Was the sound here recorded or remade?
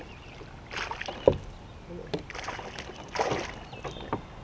recorded